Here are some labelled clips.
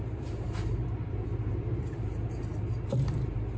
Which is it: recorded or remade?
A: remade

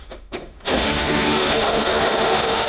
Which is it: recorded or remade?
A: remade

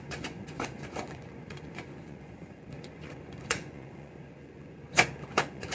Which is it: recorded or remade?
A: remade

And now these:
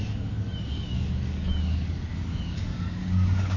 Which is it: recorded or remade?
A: remade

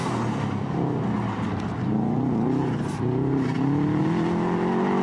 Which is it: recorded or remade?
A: recorded